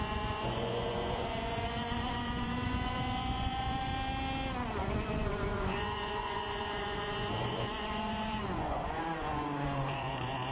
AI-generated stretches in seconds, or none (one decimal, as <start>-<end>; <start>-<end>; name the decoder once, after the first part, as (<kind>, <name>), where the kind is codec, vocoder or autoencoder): 0.0-3.9 (vocoder, Vocos); 4.9-10.5